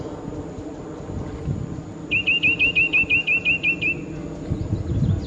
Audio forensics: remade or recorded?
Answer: recorded